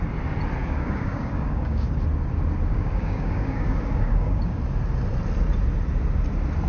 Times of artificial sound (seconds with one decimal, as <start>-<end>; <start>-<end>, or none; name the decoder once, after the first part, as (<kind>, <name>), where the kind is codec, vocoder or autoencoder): 0.6-2.0 (codec, DAC); 2.7-4.6